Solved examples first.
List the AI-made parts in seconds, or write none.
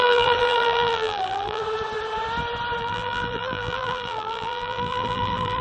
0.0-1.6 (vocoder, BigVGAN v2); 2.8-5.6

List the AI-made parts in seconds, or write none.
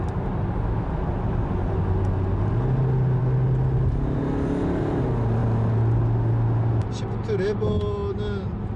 none